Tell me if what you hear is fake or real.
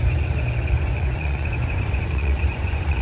fake